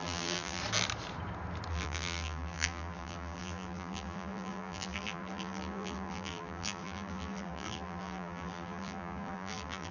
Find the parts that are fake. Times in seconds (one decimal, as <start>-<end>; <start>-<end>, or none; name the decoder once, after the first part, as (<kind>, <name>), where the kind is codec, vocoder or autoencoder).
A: 0.0-0.6 (vocoder, BigVGAN v2); 1.7-9.9